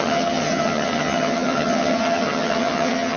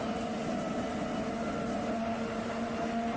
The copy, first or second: first